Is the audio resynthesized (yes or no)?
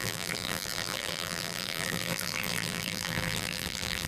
yes